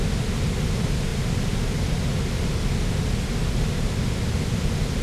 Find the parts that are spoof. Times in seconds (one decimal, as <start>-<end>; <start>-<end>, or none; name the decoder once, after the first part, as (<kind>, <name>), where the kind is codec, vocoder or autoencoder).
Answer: none